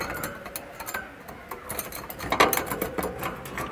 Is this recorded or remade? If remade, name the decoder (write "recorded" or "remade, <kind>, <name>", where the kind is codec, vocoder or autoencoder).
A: recorded